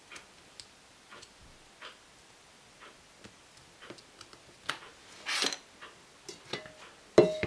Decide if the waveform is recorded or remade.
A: recorded